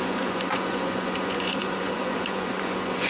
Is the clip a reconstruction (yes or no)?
yes